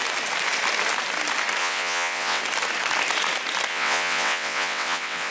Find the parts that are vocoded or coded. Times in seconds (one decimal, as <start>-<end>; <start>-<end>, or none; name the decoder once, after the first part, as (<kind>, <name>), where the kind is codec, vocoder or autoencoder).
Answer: 1.6-2.4 (vocoder, WaveNeXt); 3.7-5.3